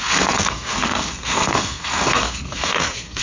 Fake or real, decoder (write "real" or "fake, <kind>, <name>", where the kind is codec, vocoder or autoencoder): fake, codec, SNAC